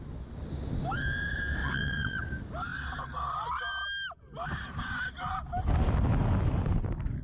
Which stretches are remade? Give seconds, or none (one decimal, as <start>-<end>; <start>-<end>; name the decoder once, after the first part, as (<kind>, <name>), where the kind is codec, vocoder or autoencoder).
1.6-2.2 (vocoder, WaveNeXt)